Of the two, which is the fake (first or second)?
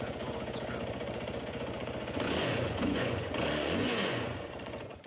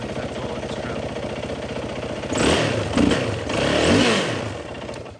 first